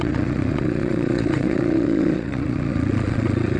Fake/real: fake